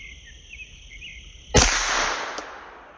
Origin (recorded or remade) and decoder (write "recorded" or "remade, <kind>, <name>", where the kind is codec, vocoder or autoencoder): recorded